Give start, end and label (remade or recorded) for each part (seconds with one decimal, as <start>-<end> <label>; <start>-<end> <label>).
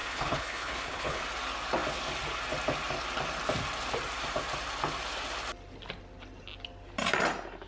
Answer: 0.0-1.2 remade; 1.2-7.7 recorded